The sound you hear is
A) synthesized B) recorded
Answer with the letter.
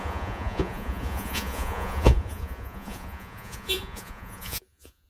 A